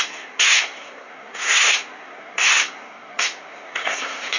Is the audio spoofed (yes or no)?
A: yes